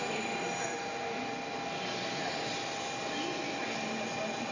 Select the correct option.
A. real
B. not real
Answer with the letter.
A